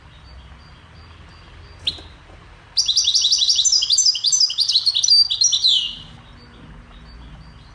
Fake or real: real